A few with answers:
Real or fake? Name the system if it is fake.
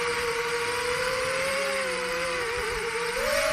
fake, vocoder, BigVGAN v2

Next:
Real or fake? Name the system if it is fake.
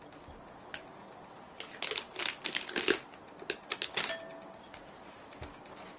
real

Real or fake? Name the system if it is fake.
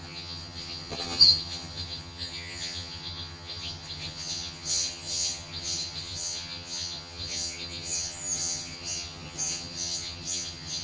fake, vocoder, HiFi-GAN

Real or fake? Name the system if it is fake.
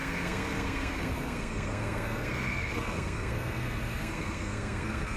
fake, codec, SNAC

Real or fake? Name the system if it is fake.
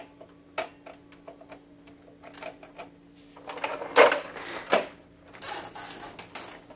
real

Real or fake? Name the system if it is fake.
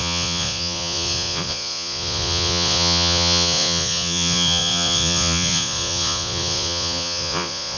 fake, vocoder, Vocos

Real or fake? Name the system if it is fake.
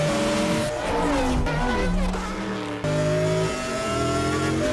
real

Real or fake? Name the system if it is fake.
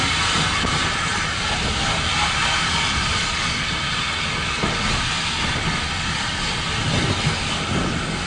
real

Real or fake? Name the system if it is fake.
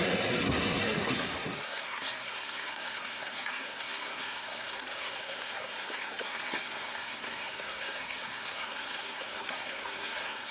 fake, codec, SNAC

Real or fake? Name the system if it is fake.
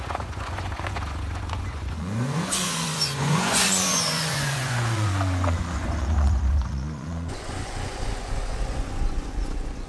fake, vocoder, Vocos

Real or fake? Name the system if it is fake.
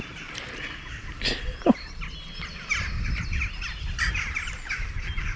real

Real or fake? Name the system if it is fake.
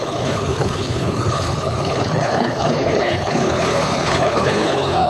fake, codec, HILCodec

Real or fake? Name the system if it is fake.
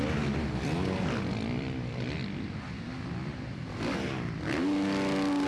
real